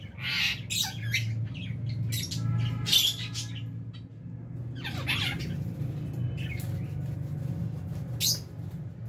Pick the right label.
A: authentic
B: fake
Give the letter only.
A